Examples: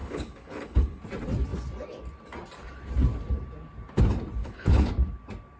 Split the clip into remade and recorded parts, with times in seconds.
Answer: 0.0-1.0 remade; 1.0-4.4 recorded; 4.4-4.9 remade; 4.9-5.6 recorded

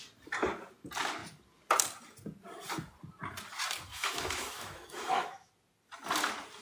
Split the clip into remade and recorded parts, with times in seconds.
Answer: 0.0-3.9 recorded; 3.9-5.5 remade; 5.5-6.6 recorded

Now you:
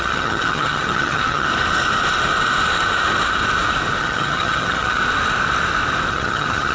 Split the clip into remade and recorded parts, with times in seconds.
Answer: 0.0-1.5 remade; 1.5-4.0 recorded; 4.0-5.0 remade; 5.0-6.1 recorded; 6.1-6.7 remade

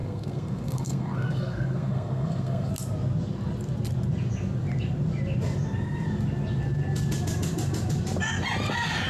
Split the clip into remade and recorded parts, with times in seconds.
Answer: 0.0-2.7 remade; 2.7-9.1 recorded